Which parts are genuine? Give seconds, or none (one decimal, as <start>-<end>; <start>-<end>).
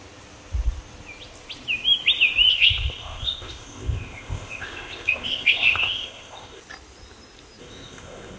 0.0-2.5; 6.6-7.6